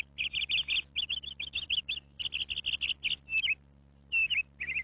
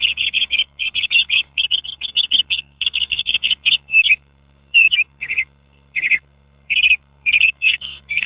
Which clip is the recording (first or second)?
first